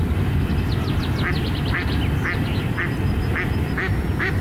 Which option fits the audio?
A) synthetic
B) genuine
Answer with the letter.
B